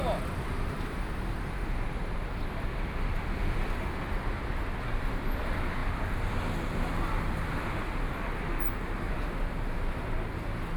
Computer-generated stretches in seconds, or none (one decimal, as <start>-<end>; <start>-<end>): none